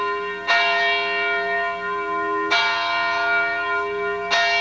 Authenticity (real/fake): real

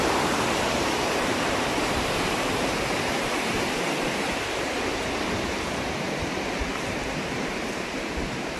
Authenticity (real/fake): fake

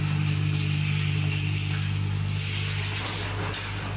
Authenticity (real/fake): fake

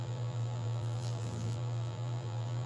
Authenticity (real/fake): fake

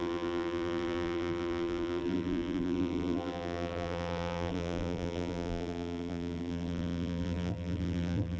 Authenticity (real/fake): fake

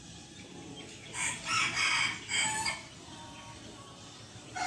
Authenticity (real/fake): real